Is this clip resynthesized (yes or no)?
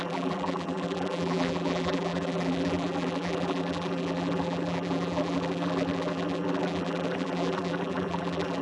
yes